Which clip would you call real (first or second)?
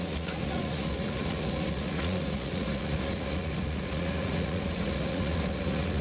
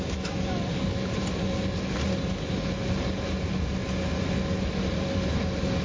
second